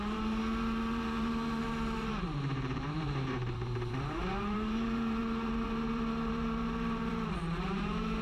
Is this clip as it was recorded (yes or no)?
no